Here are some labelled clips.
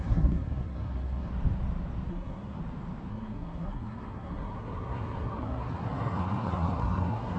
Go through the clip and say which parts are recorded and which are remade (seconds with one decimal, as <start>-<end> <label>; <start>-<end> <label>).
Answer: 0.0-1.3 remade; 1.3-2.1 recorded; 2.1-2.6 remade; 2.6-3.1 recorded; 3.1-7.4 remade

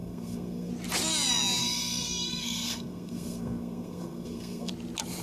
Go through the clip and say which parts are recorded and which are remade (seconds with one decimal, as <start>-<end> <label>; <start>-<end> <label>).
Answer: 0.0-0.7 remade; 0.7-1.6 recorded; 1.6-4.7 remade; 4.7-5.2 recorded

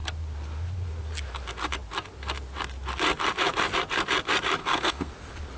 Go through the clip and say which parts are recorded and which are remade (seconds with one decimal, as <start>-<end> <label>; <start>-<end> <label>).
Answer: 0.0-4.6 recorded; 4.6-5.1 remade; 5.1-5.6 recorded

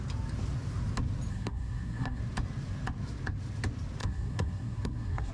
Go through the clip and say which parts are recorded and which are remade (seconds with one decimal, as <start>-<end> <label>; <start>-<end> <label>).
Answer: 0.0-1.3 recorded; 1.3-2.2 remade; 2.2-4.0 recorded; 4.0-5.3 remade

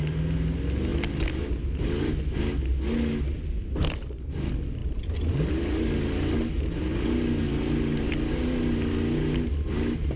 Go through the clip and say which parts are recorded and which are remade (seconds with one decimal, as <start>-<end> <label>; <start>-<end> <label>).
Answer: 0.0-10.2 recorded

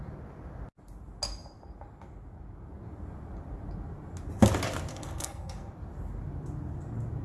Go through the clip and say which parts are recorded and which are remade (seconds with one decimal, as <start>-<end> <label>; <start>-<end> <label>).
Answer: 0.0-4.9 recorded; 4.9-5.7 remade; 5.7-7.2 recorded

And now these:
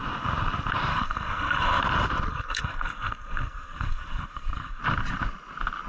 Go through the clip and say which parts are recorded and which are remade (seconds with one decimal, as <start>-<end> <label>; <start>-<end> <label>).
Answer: 0.0-0.9 recorded; 0.9-1.8 remade; 1.8-2.3 recorded; 2.3-4.8 remade; 4.8-5.9 recorded

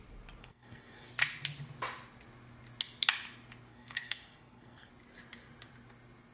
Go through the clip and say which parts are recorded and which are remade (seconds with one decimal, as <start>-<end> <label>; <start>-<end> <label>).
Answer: 0.0-0.4 recorded; 0.4-1.1 remade; 1.1-3.7 recorded; 3.7-4.9 remade; 4.9-6.3 recorded